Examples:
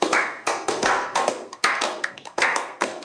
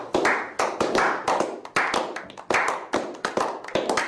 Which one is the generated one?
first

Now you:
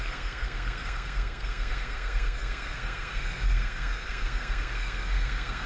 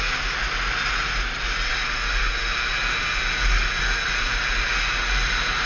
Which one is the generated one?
first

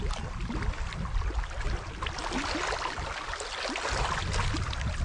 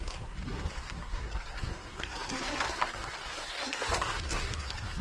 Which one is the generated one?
second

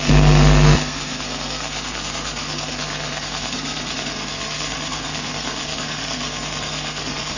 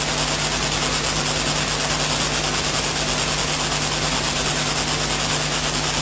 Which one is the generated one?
first